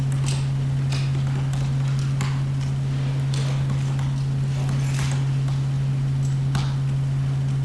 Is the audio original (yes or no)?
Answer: yes